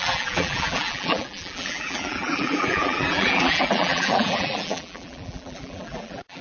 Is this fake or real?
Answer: fake